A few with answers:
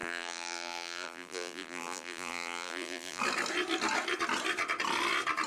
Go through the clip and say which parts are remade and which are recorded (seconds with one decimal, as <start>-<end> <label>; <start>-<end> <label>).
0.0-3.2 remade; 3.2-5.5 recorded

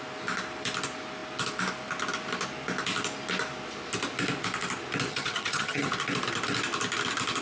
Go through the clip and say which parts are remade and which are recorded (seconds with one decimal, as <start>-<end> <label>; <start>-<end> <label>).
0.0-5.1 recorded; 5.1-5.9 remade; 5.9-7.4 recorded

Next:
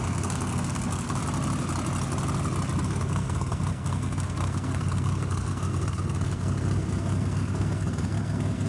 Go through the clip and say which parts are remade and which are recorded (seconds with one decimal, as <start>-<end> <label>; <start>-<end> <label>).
0.0-1.2 remade; 1.2-2.8 recorded; 2.8-8.7 remade

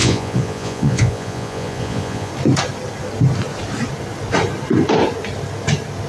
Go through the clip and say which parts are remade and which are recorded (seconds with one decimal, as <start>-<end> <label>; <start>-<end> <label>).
0.0-2.3 remade; 2.3-6.1 recorded

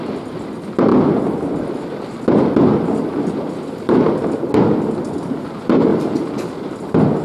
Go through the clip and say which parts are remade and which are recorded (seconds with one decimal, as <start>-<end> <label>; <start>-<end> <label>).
0.0-7.2 recorded

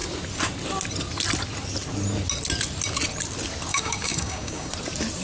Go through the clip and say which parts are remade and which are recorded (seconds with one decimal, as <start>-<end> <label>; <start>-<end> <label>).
0.0-3.7 recorded; 3.7-4.7 remade; 4.7-5.2 recorded

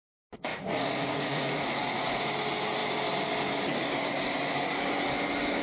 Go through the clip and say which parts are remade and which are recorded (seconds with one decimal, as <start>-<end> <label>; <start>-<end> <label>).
0.0-0.5 recorded; 0.5-2.3 remade; 2.3-5.6 recorded